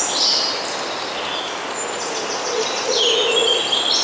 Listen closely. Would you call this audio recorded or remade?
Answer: recorded